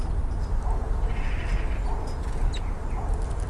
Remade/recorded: recorded